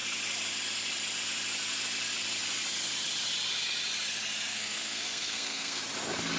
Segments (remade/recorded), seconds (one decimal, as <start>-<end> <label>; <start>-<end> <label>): 0.0-4.5 recorded; 4.5-5.8 remade; 5.8-6.4 recorded